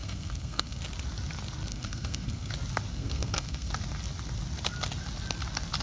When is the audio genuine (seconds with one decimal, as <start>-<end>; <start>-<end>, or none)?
0.8-1.7; 2.5-2.9; 3.7-5.8